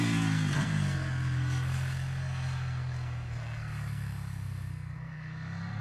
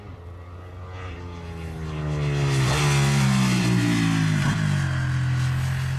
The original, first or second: second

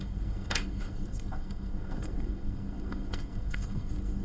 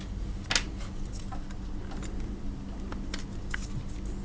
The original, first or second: second